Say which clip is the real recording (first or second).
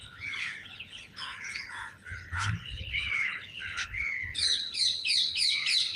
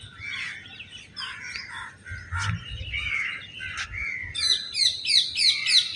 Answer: second